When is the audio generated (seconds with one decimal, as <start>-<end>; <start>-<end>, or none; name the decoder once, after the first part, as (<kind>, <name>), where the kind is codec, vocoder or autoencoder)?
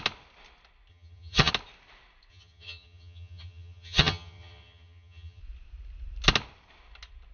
0.9-1.5 (vocoder, HiFi-GAN); 2.3-5.4